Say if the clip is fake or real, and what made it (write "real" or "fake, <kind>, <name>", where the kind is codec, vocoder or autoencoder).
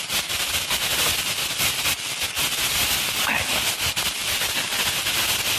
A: real